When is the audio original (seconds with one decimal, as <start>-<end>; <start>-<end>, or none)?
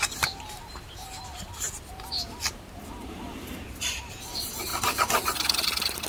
1.3-1.9